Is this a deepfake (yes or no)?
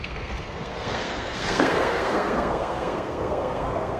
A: yes